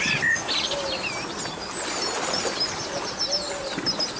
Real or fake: real